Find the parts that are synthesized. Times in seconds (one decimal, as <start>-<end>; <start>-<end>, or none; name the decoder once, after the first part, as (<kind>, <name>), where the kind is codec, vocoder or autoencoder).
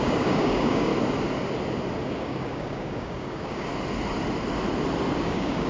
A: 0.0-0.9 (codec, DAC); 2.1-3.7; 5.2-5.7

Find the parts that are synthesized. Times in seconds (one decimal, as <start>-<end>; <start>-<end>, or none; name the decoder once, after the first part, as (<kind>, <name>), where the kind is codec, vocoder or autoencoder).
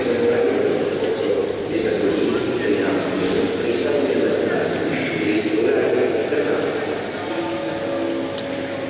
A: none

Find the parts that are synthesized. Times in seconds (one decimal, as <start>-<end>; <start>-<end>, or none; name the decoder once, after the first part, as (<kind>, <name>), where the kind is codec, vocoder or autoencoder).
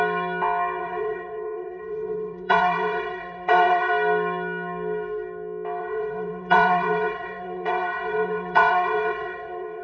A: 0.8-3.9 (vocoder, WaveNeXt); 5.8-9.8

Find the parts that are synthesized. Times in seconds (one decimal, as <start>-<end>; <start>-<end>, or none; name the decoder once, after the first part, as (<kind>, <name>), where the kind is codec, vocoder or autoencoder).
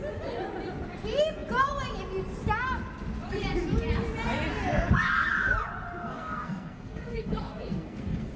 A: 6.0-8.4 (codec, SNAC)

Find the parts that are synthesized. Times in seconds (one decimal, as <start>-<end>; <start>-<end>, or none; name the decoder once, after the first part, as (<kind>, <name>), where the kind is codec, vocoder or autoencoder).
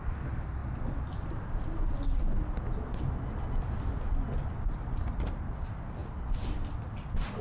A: none